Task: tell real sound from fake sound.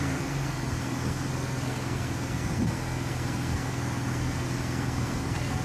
fake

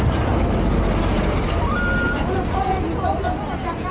real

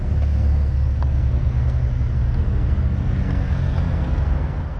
fake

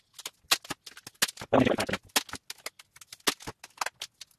real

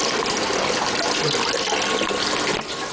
real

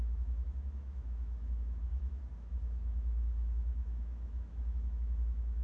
fake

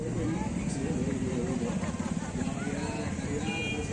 real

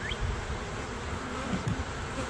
fake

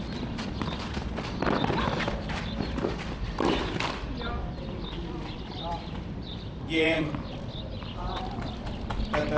fake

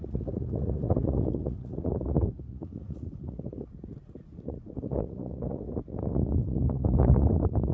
fake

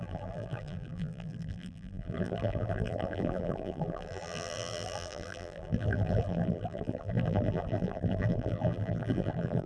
fake